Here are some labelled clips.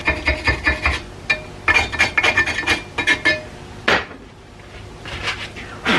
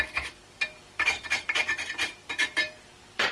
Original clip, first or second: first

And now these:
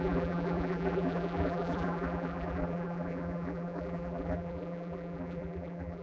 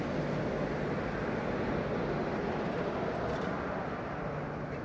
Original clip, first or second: second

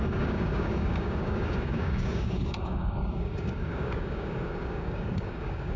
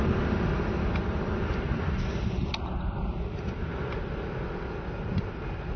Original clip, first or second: second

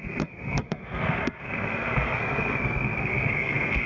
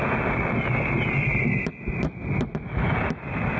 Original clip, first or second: second